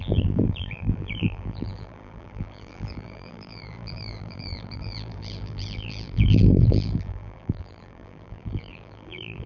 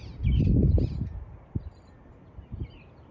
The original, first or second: second